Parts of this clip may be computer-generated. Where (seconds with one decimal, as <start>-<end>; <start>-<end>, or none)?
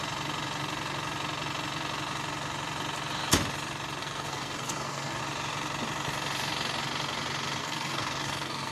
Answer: 4.0-5.2; 7.6-8.7